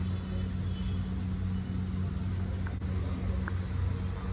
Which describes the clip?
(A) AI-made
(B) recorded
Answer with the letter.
B